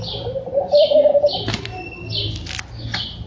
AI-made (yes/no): no